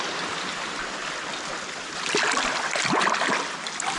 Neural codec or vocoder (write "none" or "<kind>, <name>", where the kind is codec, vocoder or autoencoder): none